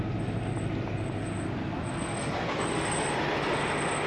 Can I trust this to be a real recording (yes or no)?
yes